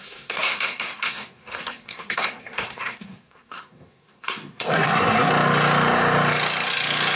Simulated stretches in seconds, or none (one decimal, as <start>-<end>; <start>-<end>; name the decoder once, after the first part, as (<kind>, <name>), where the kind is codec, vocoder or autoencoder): 0.0-5.3 (codec, SNAC)